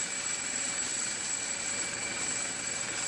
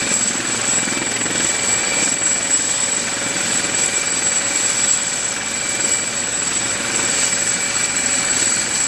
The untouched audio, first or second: second